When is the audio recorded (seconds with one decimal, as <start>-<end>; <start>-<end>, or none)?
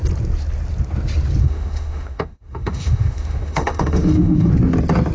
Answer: 0.0-1.4; 4.5-5.1